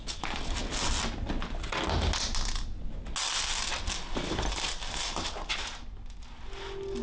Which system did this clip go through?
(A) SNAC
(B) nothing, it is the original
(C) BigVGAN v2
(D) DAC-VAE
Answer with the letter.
B